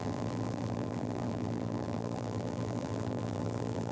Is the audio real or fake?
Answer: fake